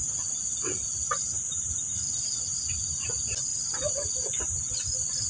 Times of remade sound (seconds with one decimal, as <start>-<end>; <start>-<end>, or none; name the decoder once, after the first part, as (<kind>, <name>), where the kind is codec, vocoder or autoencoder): none